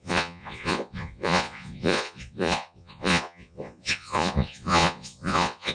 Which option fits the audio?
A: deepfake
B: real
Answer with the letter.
A